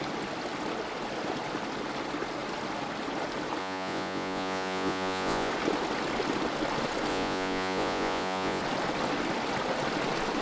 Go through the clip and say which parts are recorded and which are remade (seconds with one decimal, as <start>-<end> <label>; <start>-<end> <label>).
0.0-3.6 recorded; 3.6-5.5 remade; 5.5-7.1 recorded; 7.1-8.6 remade; 8.6-10.4 recorded